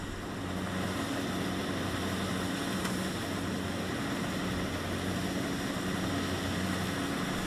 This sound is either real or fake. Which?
real